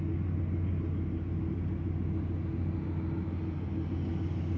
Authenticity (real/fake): real